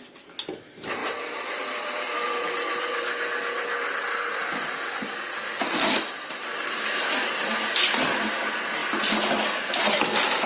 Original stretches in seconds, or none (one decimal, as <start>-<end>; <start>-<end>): 0.0-1.0; 2.5-4.4; 7.4-10.5